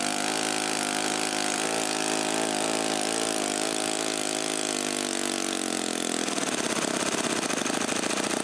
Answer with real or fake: real